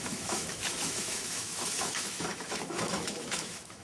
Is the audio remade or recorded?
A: remade